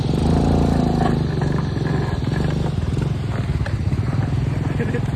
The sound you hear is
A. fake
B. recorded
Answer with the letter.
B